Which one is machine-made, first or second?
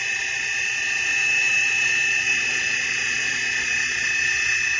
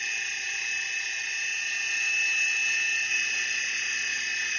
first